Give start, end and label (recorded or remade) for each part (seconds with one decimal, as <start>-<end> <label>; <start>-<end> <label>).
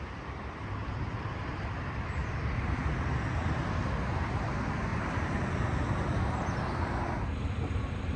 0.0-0.8 recorded; 0.8-1.5 remade; 1.5-2.2 recorded; 2.2-2.9 remade; 2.9-4.9 recorded; 4.9-5.5 remade; 5.5-8.2 recorded